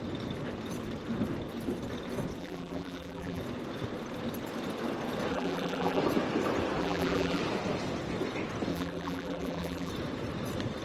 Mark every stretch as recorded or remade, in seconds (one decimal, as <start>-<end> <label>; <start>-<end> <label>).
0.0-2.4 recorded; 2.4-3.4 remade; 3.4-5.3 recorded; 5.3-6.0 remade; 6.0-6.8 recorded; 6.8-7.4 remade; 7.4-8.7 recorded; 8.7-9.9 remade; 9.9-10.8 recorded